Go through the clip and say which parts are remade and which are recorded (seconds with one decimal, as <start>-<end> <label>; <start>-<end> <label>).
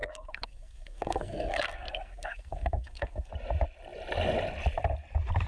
0.0-3.3 remade; 3.3-5.5 recorded